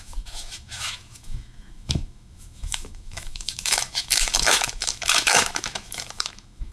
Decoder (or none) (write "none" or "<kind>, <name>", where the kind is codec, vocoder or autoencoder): autoencoder, DAC-VAE